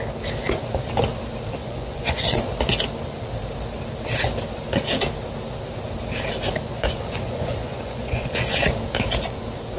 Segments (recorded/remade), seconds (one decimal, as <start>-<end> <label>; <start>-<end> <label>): 0.0-1.6 recorded; 1.6-2.6 remade; 2.6-6.7 recorded; 6.7-8.5 remade; 8.5-9.8 recorded